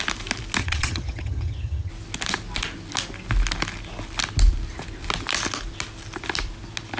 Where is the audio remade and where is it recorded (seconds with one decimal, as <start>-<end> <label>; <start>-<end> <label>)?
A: 0.0-0.6 recorded; 0.6-1.9 remade; 1.9-7.0 recorded